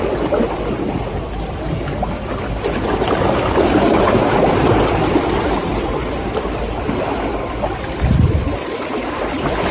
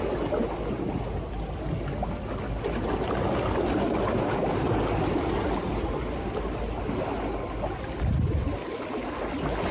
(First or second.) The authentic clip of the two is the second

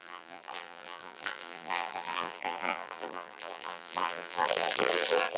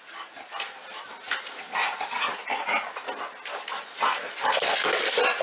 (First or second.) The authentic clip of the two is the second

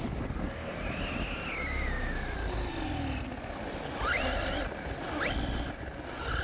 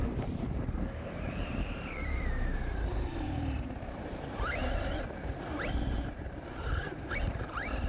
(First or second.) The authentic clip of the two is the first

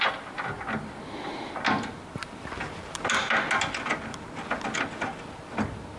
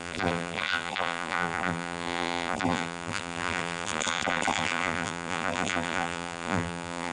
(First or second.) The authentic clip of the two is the first